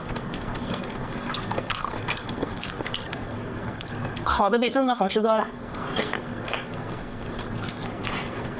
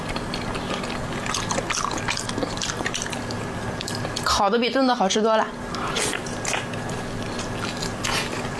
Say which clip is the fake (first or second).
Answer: first